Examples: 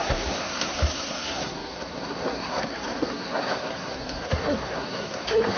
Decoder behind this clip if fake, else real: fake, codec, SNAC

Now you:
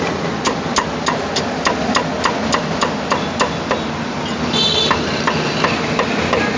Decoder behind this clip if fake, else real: real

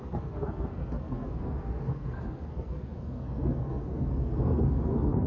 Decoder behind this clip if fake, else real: fake, codec, SNAC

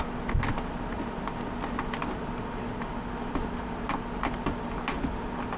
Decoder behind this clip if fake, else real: real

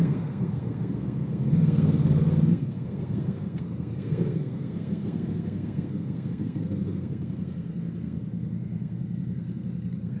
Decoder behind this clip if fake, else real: fake, codec, SNAC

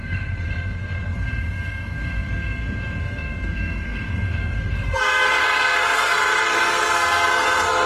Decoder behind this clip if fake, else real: fake, codec, SNAC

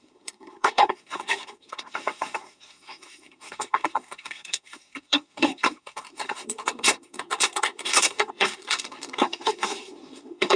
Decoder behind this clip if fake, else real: fake, codec, SNAC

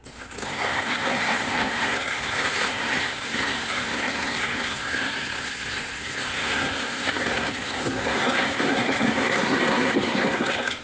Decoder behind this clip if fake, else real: fake, codec, SNAC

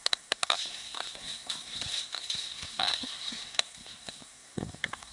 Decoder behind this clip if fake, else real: fake, codec, SNAC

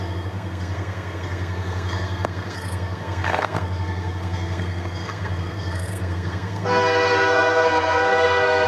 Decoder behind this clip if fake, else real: fake, codec, SNAC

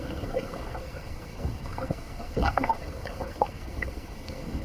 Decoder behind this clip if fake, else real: fake, codec, SNAC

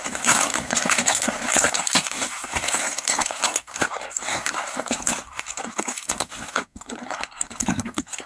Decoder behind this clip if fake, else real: fake, codec, SNAC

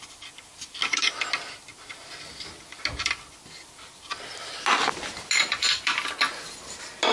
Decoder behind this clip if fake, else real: real